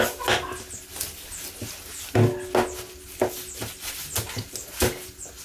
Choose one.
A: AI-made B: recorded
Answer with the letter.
B